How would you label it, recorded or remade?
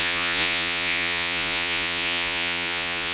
remade